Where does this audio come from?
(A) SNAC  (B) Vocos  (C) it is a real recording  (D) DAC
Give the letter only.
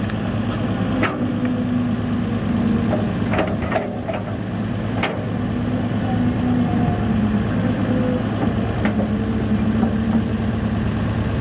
C